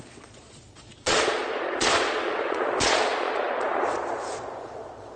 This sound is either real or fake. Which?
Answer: fake